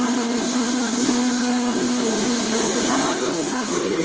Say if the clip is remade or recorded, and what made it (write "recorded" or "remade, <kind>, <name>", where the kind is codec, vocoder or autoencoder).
remade, codec, SNAC